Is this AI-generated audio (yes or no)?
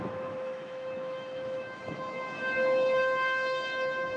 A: yes